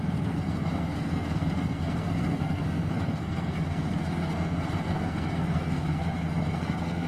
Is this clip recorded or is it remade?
remade